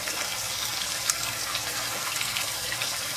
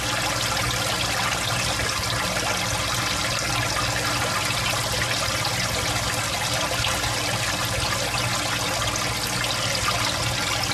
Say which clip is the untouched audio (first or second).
second